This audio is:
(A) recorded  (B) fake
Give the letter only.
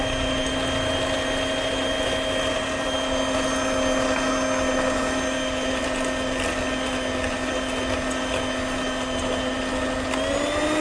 A